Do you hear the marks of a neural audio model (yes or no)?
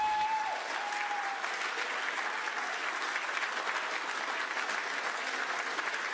no